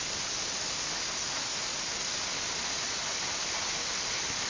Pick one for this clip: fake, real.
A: real